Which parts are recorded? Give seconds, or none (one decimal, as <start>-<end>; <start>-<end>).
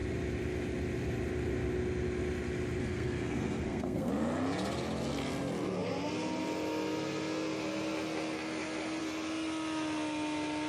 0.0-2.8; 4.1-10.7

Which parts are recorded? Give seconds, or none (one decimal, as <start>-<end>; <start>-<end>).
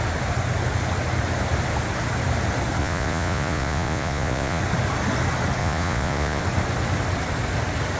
0.0-2.8; 4.6-5.6; 6.4-8.0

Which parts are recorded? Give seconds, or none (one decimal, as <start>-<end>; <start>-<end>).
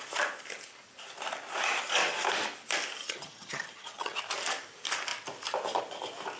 0.0-3.0; 4.2-6.4